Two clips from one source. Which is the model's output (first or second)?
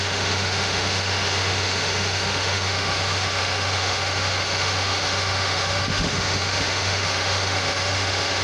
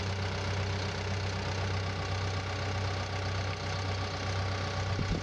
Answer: first